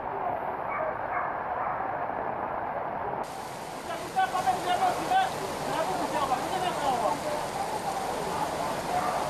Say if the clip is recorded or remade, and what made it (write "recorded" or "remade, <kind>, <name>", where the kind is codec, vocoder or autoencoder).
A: recorded